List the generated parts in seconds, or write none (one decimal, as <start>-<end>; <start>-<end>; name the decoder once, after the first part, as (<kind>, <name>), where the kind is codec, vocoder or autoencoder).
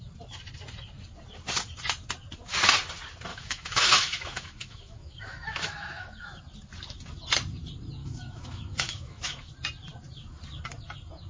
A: 3.3-6.4 (autoencoder, DAC-VAE); 8.0-9.5